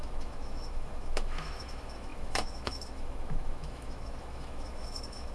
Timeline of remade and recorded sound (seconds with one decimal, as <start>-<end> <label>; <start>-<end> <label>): 0.0-5.3 remade